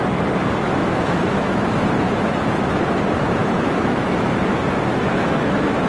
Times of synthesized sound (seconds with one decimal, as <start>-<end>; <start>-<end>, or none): 0.8-2.7; 3.4-4.4; 4.9-5.9